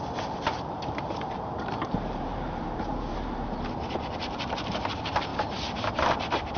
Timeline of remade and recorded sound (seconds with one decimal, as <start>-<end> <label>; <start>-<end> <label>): 0.0-5.3 remade; 5.3-5.9 recorded; 5.9-6.6 remade

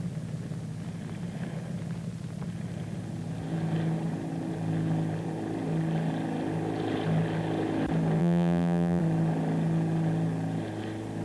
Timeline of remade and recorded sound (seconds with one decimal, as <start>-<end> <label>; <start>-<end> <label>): 0.0-8.2 recorded; 8.2-9.0 remade; 9.0-11.2 recorded

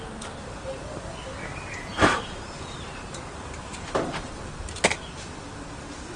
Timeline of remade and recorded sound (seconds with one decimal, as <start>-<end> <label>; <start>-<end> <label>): 0.0-1.9 recorded; 1.9-4.3 remade; 4.3-6.2 recorded

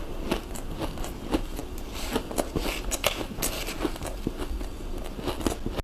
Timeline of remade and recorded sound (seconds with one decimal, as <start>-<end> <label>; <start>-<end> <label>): 0.0-5.8 recorded

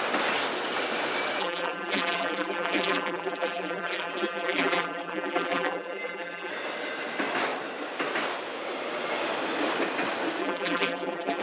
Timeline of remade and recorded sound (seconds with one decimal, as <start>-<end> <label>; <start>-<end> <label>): 0.0-1.4 recorded; 1.4-6.5 remade; 6.5-10.4 recorded; 10.4-11.4 remade

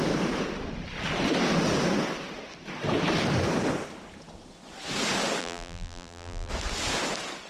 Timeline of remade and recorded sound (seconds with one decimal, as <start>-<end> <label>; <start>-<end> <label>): 0.0-5.4 recorded; 5.4-6.5 remade; 6.5-7.5 recorded

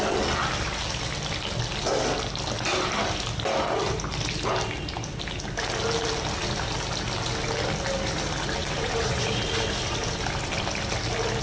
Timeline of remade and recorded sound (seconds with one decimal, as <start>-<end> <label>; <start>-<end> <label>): 0.0-8.6 recorded; 8.6-9.4 remade; 9.4-11.4 recorded

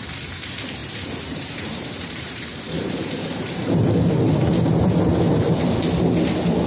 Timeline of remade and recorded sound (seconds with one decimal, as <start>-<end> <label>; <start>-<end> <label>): 0.0-0.8 recorded; 0.8-4.8 remade; 4.8-6.7 recorded